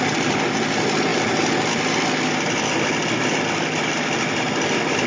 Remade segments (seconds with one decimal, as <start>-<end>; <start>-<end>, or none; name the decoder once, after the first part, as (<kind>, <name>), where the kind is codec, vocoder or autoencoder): none